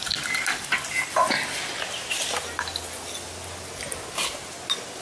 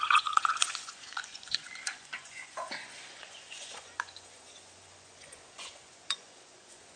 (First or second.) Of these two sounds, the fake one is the second